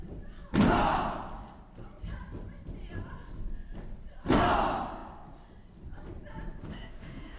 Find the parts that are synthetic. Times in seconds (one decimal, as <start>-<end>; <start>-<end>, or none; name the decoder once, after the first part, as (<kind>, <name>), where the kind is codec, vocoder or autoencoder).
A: 6.7-7.4 (autoencoder, DAC-VAE)